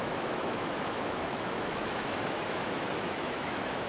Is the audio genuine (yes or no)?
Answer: no